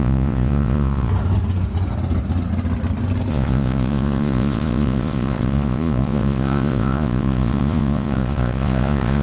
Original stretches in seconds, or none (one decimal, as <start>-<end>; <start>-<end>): 1.1-3.3